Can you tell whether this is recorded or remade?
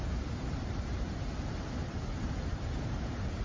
recorded